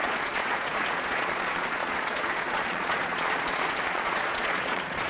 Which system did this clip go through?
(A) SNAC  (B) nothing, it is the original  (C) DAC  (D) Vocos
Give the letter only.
D